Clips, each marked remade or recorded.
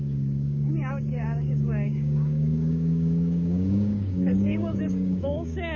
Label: remade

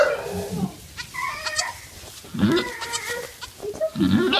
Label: recorded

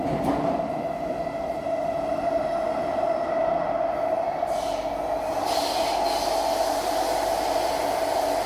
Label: recorded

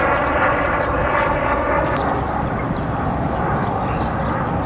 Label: recorded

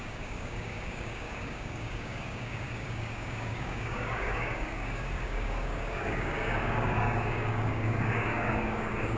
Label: remade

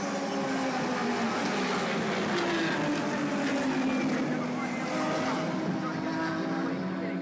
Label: recorded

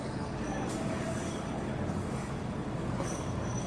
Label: remade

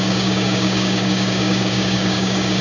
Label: remade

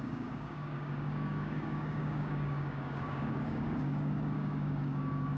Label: remade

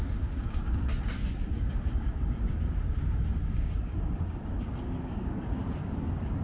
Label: remade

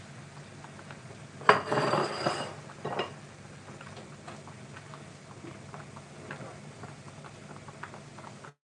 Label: recorded